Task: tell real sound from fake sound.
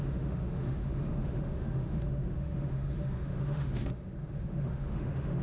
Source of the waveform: fake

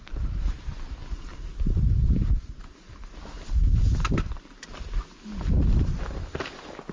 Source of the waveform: real